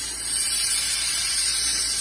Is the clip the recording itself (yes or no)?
no